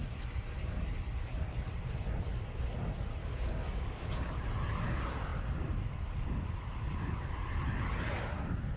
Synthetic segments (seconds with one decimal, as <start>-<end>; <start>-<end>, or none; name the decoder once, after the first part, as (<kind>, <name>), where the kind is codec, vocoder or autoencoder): 3.2-4.3 (codec, DAC)